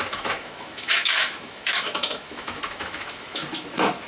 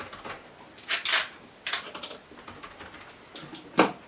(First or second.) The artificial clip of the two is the first